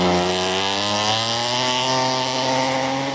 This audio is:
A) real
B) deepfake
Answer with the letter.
A